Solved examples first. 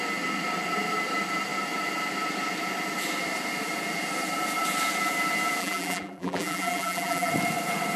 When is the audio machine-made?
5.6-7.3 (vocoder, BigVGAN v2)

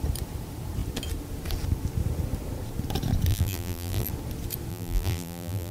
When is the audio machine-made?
3.3-4.1 (vocoder, BigVGAN v2); 4.7-5.7